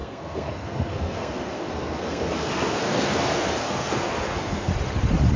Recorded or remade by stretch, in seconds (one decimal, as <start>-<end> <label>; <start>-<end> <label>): 0.0-4.7 remade; 4.7-5.4 recorded